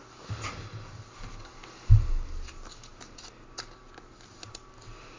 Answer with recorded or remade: recorded